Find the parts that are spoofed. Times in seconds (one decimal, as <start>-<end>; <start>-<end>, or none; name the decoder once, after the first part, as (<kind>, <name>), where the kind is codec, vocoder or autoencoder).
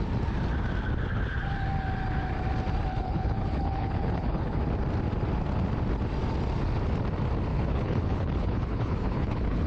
2.9-4.6 (codec, HILCodec); 7.5-9.7